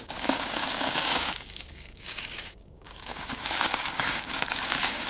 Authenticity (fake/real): fake